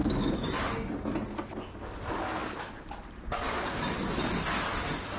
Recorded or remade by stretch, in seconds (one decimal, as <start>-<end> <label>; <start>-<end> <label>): 0.0-0.6 remade; 0.6-5.2 recorded

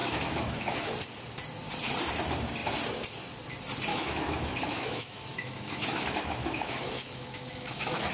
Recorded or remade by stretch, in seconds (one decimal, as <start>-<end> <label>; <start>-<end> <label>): 0.0-0.9 remade; 0.9-3.9 recorded; 3.9-8.1 remade